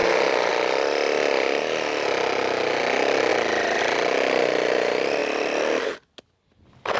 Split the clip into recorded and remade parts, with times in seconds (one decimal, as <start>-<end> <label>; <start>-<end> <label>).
0.0-7.0 recorded